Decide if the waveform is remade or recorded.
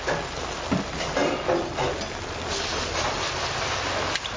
recorded